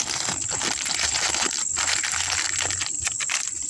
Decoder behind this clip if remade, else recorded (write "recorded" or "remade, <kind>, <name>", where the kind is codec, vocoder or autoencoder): recorded